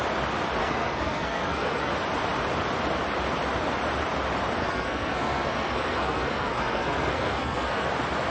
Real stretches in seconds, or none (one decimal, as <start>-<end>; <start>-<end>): 0.0-0.6; 1.9-4.6; 7.9-8.3